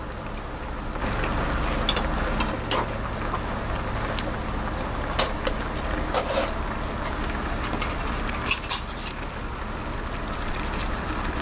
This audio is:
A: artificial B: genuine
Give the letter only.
B